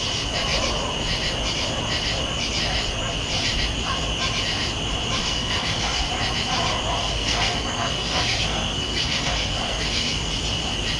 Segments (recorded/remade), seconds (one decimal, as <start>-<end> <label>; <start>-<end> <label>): 0.0-5.2 recorded; 5.2-6.0 remade; 6.0-7.0 recorded; 7.0-10.3 remade; 10.3-11.0 recorded